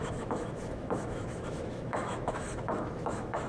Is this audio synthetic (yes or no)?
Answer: yes